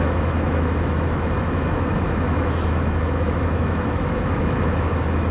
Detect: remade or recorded remade